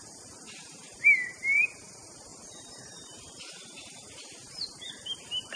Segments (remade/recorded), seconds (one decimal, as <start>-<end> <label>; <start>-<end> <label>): 0.0-5.6 recorded